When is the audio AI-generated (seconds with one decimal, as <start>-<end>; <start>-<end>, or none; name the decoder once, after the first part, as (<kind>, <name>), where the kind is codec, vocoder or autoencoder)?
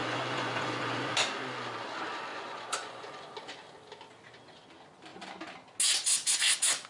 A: 0.0-1.1 (vocoder, Vocos); 2.3-3.3